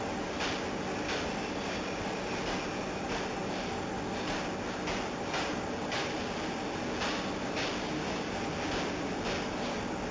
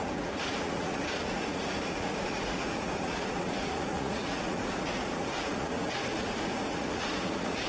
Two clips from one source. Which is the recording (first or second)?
first